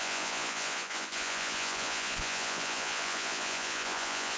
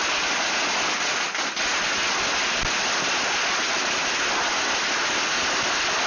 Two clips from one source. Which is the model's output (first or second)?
first